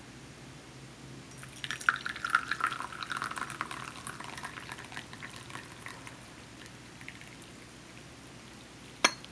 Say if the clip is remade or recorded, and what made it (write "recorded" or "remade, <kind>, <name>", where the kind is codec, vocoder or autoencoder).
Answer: recorded